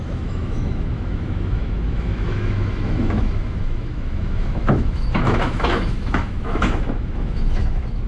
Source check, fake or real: fake